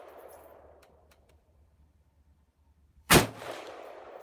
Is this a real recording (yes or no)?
no